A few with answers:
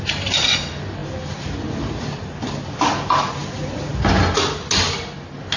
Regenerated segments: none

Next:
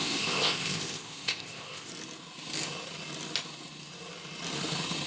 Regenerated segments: 0.0-1.9 (codec, ZipCodec)

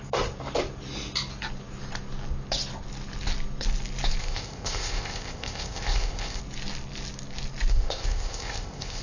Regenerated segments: 4.2-6.4 (codec, ZipCodec); 7.7-9.0